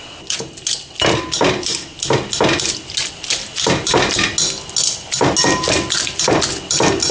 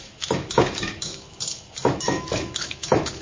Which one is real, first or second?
first